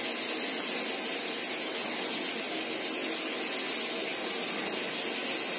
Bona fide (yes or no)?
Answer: yes